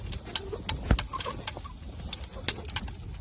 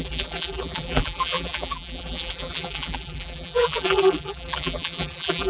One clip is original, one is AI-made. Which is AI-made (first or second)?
second